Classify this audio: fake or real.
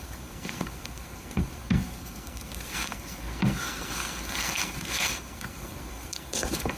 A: fake